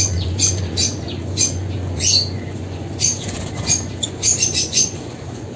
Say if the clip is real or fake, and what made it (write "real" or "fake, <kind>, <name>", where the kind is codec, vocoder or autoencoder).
fake, vocoder, Vocos